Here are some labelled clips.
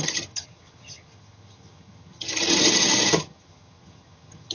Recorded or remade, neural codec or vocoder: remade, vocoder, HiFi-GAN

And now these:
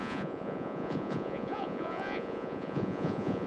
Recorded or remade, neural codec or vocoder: remade, vocoder, Vocos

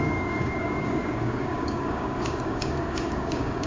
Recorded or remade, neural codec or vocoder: remade, codec, DAC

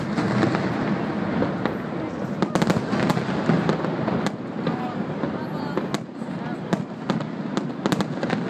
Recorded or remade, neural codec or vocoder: recorded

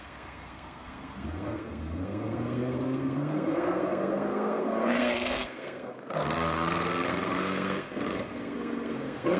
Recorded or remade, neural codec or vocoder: remade, codec, SNAC